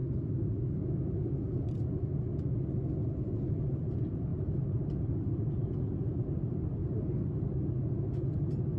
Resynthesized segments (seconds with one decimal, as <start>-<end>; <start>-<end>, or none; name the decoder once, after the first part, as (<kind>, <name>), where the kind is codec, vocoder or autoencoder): 4.3-5.5 (vocoder, BigVGAN v2); 6.8-7.3